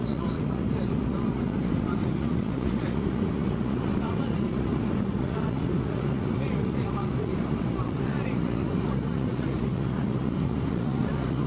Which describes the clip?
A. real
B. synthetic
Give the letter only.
B